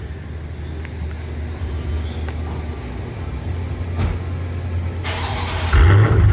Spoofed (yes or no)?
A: no